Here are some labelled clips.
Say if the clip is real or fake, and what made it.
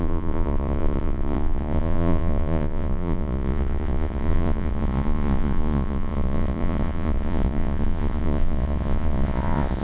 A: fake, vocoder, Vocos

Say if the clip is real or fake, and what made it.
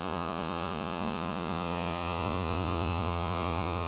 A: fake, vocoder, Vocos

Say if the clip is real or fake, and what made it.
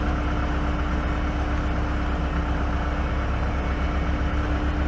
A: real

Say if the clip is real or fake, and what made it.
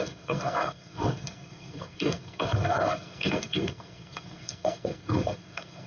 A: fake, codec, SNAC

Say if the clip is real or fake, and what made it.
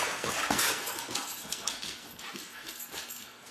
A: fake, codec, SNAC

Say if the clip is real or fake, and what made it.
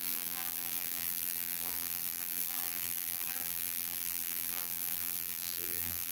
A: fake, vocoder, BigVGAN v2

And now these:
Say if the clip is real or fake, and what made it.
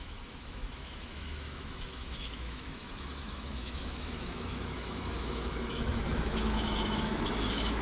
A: fake, autoencoder, DAC-VAE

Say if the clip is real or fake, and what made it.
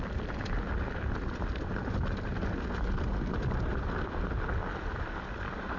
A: real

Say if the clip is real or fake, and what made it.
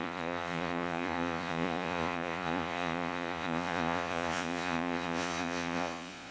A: fake, vocoder, Vocos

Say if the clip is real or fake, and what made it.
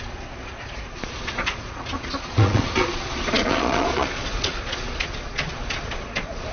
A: fake, vocoder, Vocos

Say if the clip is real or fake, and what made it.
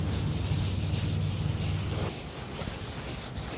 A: real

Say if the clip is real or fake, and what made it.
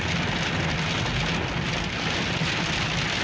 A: real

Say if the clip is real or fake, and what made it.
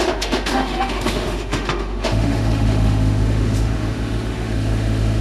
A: fake, autoencoder, DAC-VAE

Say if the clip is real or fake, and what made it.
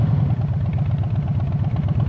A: fake, vocoder, BigVGAN v2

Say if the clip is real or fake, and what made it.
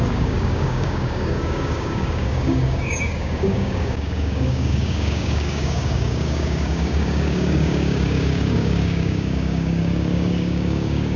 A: fake, codec, DAC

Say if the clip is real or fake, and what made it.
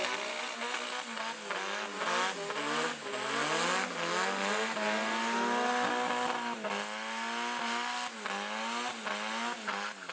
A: real